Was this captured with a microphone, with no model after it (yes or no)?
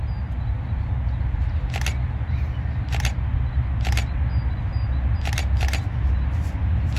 yes